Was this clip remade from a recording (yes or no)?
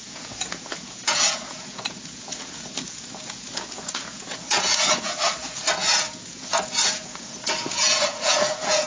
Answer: yes